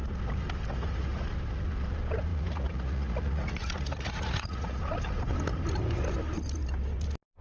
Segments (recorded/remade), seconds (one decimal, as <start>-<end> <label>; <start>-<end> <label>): 0.0-2.3 recorded; 2.3-4.8 remade; 4.8-7.4 recorded